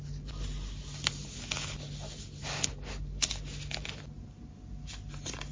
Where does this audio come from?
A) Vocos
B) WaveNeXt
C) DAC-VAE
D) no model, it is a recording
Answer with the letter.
D